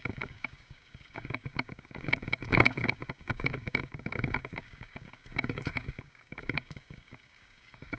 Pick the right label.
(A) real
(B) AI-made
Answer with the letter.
B